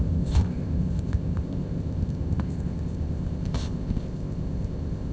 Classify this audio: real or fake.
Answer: fake